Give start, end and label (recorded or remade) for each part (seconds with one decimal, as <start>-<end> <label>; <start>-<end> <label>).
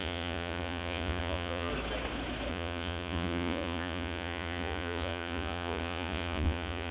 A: 0.0-1.7 remade; 1.7-2.5 recorded; 2.5-6.9 remade